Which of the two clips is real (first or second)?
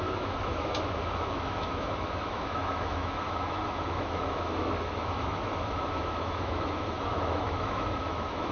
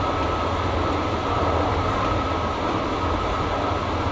second